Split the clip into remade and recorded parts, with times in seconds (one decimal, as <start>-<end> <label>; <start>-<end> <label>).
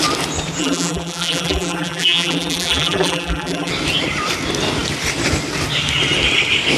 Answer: 0.0-0.6 recorded; 0.6-3.7 remade; 3.7-6.8 recorded